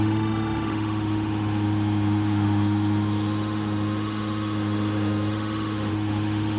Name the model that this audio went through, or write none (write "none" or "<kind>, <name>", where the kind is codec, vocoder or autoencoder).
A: autoencoder, DAC-VAE